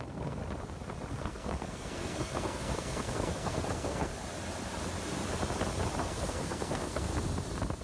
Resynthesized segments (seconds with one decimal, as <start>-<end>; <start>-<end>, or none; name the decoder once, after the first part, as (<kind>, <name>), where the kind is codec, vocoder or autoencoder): 0.0-0.4 (codec, SNAC); 1.1-4.1; 6.0-7.1